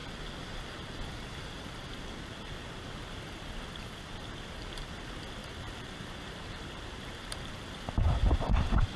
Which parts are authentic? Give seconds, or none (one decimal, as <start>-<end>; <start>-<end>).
0.0-5.4; 7.6-9.0